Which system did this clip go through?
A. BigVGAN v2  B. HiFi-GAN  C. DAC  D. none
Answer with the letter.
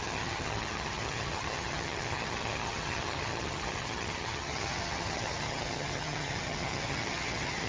B